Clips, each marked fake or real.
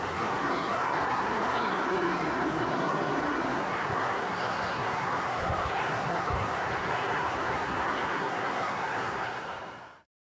fake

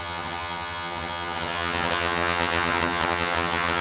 fake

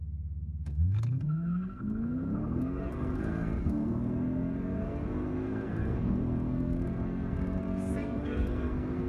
fake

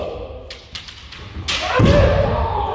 real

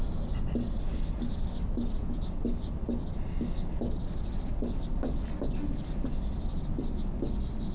real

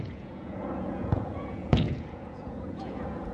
fake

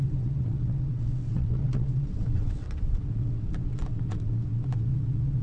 fake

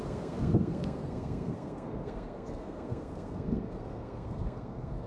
fake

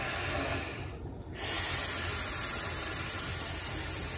real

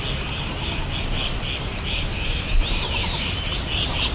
real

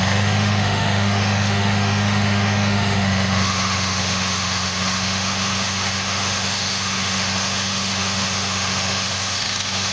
fake